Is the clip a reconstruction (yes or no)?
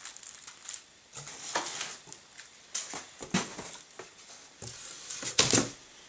no